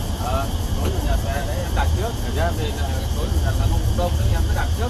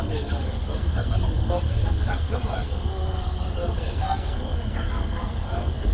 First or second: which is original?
first